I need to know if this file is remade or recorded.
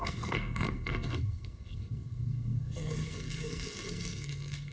remade